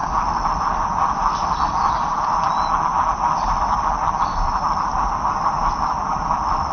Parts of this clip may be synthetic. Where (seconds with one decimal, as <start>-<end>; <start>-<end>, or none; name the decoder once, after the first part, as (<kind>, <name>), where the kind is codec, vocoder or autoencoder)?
none